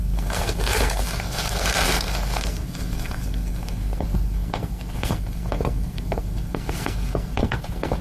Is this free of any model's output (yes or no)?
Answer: no